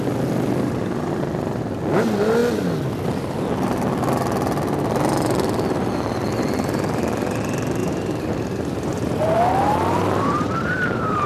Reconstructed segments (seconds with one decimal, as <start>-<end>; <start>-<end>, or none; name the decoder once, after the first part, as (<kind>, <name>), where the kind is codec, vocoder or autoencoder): 7.8-11.3 (vocoder, BigVGAN v2)